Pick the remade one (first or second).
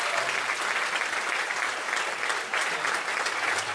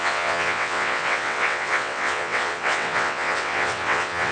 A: second